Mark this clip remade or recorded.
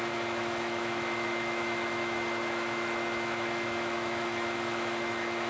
remade